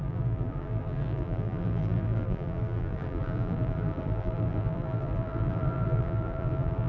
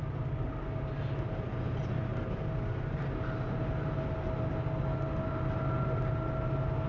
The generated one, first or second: first